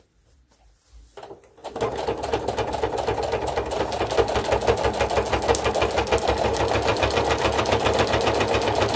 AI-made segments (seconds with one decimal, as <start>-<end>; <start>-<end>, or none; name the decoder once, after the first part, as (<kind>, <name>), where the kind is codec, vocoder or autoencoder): none